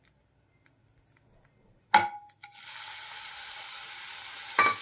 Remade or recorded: recorded